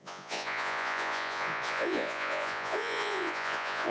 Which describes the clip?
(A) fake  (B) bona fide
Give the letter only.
A